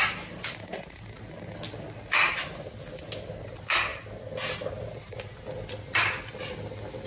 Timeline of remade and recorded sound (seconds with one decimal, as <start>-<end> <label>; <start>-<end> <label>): 0.0-7.1 recorded